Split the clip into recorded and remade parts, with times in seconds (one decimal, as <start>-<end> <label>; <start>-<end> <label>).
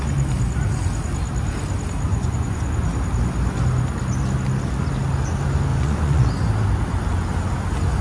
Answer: 0.0-2.1 recorded; 2.1-2.7 remade; 2.7-5.7 recorded; 5.7-6.3 remade; 6.3-8.0 recorded